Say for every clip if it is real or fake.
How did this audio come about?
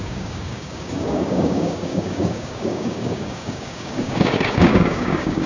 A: fake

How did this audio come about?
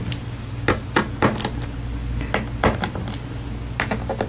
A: real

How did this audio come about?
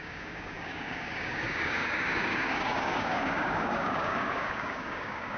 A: fake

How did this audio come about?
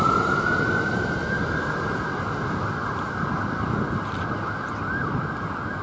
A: real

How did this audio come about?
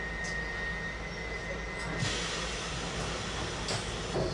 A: real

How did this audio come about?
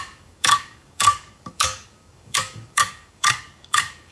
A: fake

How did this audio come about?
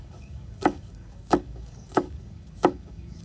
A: fake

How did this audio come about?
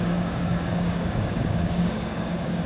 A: fake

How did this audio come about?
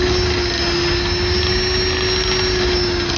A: real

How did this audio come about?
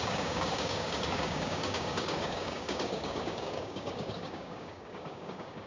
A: fake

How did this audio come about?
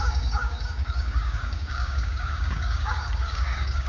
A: fake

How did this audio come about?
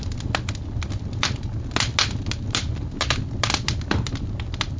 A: real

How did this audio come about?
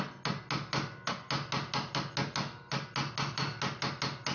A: real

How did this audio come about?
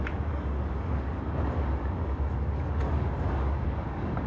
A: fake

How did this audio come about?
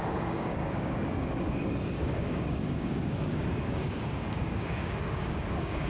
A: fake